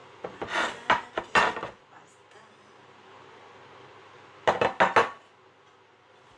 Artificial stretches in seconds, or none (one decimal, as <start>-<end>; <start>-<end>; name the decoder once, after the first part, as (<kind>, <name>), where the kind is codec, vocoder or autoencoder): none